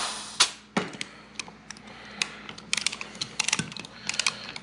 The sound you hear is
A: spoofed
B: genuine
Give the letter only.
B